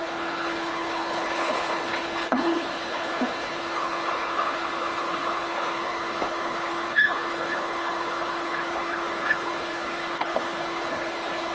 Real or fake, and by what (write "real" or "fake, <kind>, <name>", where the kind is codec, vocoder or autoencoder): fake, codec, HILCodec